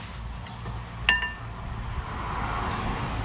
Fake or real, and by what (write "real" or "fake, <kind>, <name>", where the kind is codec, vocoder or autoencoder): real